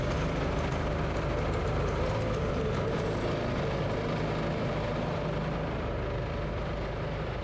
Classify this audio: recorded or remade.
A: recorded